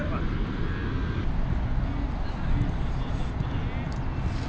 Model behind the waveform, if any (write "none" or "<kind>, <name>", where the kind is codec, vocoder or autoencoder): none